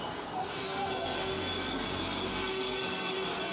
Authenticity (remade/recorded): remade